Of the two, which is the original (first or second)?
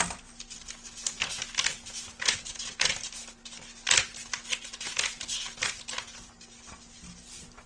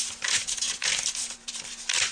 first